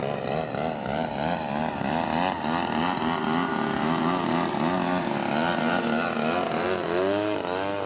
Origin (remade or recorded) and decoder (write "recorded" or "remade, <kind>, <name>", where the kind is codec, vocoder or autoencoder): recorded